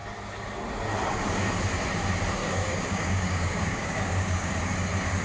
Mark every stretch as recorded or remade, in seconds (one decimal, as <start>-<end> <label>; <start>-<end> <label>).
0.0-2.4 recorded; 2.4-4.5 remade; 4.5-5.2 recorded